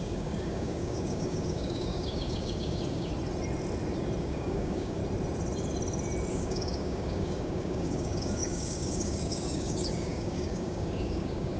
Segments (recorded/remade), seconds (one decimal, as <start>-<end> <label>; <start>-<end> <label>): 0.0-3.1 remade; 3.1-4.2 recorded; 4.2-5.0 remade; 5.0-6.3 recorded; 6.3-11.6 remade